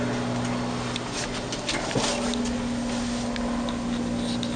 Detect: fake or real real